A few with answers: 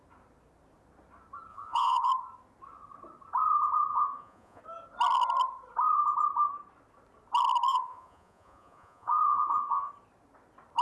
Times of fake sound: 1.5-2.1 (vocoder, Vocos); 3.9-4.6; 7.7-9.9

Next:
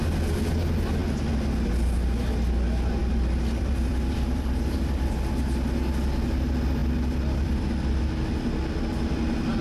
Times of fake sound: 3.0-5.3 (vocoder, BigVGAN v2); 6.8-7.6

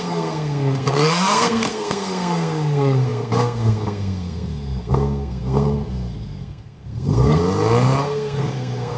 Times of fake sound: 0.0-7.4 (codec, SNAC); 8.0-9.0

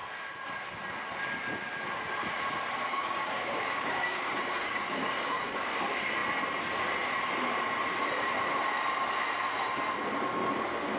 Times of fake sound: 2.9-5.6 (codec, DAC)

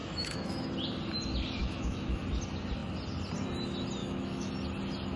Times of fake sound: 0.0-0.7 (autoencoder, DAC-VAE); 1.6-2.2; 4.0-4.5

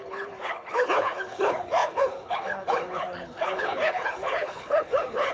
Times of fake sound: 0.0-5.3 (codec, HILCodec)